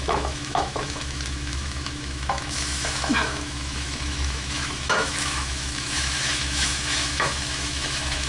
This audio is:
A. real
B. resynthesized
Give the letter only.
B